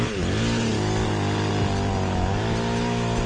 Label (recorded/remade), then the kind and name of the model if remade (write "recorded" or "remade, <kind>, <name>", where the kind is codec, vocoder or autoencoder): recorded